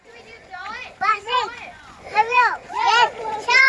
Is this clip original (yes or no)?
no